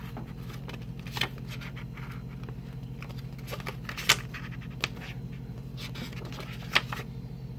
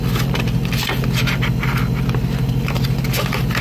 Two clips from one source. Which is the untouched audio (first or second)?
first